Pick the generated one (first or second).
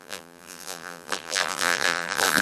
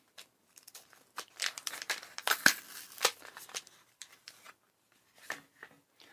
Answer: first